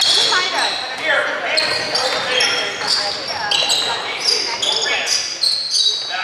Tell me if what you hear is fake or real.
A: real